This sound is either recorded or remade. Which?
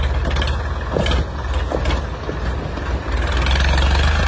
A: recorded